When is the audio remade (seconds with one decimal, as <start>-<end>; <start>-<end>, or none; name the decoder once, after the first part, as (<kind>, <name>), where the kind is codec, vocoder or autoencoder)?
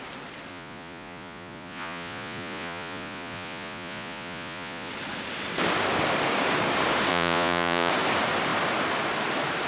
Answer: 0.5-4.9 (vocoder, Vocos); 7.1-7.9